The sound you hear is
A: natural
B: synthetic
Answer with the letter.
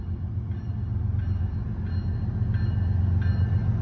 A